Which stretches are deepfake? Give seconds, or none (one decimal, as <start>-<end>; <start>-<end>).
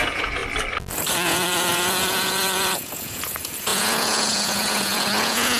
0.0-0.4; 1.1-5.6